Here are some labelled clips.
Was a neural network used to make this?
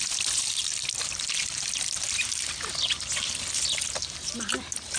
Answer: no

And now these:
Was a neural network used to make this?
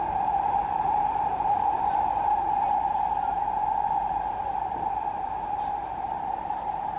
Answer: yes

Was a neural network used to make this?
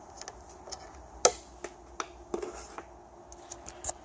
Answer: no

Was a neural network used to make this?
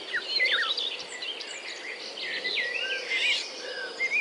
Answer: no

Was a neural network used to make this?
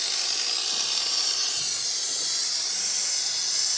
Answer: no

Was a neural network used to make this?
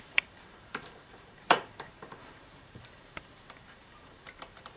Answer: yes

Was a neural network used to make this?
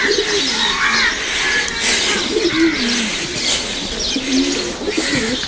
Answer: no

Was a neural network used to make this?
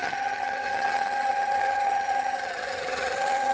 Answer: yes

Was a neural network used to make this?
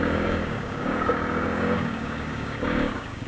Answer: yes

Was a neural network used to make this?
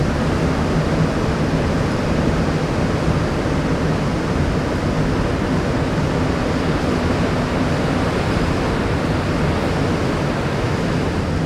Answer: no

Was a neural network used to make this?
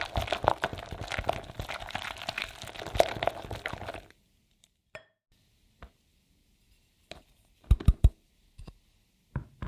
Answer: no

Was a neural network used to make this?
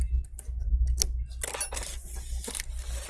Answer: no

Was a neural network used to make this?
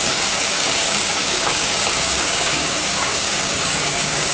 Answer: yes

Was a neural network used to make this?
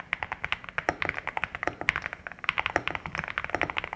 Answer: no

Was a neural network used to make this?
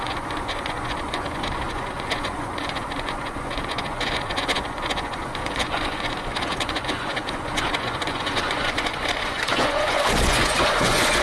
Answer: yes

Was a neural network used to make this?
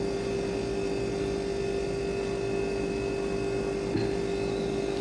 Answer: no